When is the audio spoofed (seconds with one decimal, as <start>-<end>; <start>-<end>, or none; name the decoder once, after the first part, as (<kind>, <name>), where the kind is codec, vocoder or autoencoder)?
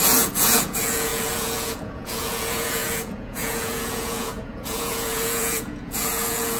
0.0-6.6 (vocoder, Vocos)